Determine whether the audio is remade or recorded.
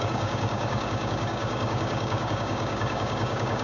remade